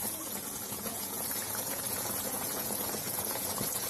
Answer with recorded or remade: remade